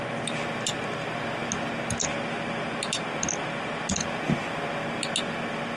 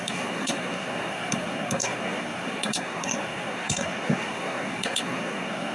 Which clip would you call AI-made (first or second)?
second